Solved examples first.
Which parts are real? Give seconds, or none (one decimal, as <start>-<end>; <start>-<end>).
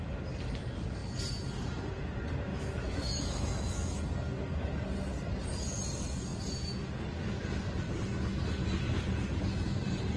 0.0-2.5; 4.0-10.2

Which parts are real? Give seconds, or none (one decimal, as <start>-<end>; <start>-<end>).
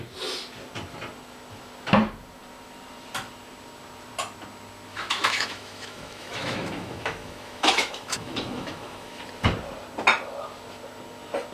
0.0-4.9; 9.2-11.5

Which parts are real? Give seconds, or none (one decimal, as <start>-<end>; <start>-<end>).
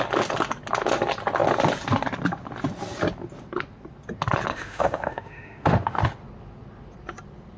0.0-4.5; 6.0-7.6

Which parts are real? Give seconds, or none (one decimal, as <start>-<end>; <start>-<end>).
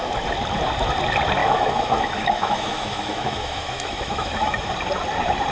0.0-1.4; 4.7-5.5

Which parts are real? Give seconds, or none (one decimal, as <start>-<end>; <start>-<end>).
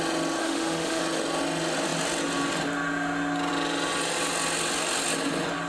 0.0-0.4; 1.0-5.7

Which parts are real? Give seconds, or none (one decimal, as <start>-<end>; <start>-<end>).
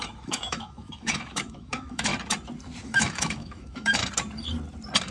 2.1-2.8; 4.0-5.1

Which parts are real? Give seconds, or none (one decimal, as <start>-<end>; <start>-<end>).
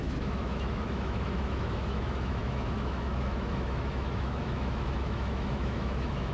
none